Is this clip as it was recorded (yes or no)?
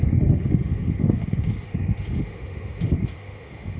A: no